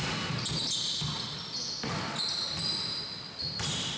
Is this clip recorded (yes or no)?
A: yes